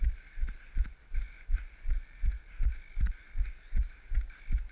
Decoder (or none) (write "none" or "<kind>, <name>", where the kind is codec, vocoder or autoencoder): none